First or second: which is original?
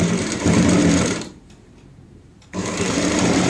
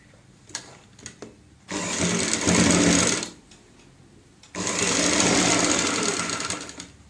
second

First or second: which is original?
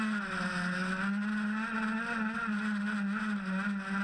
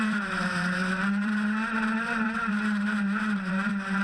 first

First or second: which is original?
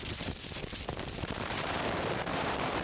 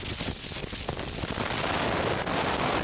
second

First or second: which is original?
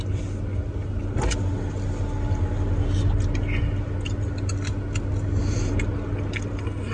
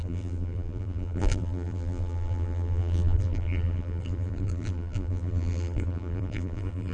first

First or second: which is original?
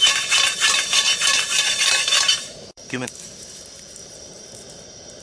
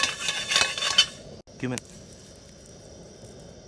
second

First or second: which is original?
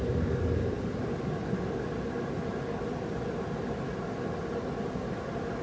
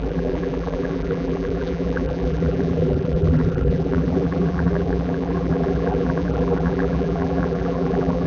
first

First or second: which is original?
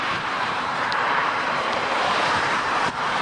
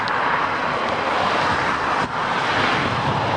second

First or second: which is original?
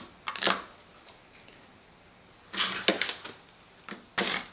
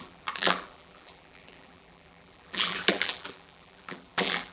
first